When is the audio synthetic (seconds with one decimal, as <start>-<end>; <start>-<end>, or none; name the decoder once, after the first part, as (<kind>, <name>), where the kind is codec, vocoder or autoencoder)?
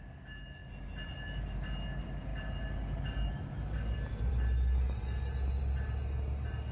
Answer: none